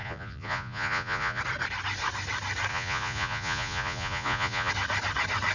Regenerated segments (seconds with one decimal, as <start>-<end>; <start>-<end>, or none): 0.0-1.4; 2.7-4.7